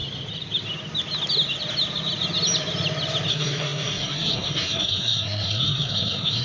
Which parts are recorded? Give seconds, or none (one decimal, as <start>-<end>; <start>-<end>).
0.0-3.3

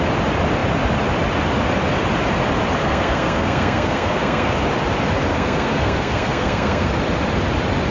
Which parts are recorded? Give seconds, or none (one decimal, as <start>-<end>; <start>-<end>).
0.0-2.8; 4.5-5.3; 7.0-7.9

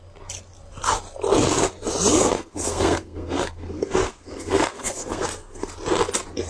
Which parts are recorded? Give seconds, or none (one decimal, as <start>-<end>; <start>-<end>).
0.0-2.1; 5.7-6.5

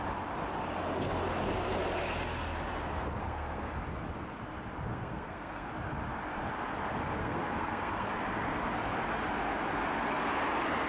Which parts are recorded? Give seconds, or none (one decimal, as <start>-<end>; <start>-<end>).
0.0-3.2; 3.7-4.9; 5.7-7.2; 8.1-10.9

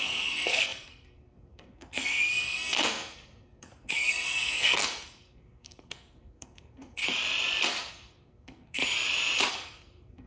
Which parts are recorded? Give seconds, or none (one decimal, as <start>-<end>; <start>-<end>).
7.0-7.8; 8.8-9.5